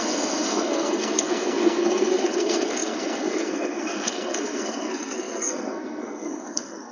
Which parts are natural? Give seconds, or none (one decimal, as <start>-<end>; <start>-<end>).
none